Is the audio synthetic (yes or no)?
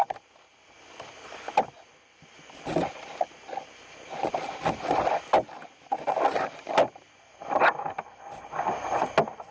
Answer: no